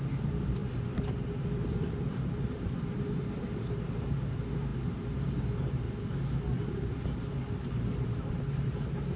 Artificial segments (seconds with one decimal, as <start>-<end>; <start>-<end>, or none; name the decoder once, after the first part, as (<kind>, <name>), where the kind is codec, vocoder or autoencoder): 0.6-3.9 (vocoder, BigVGAN v2)